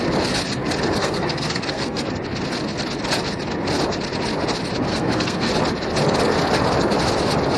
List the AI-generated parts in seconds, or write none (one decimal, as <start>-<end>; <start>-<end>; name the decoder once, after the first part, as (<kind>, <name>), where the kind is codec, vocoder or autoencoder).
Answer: 1.0-2.1 (codec, SNAC); 4.9-5.5